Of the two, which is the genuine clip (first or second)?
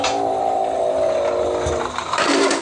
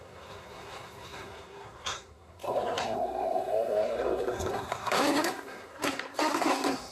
first